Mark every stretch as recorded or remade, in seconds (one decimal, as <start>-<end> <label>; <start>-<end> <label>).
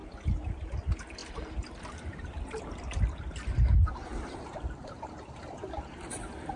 0.0-1.2 recorded; 1.2-2.6 remade; 2.6-4.1 recorded; 4.1-5.2 remade; 5.2-6.6 recorded